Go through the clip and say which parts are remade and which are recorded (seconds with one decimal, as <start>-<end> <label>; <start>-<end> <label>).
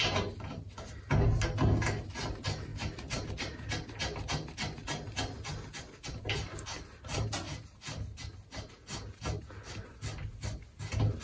0.0-11.2 recorded